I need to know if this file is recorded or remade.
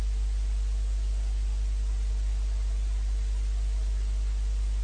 recorded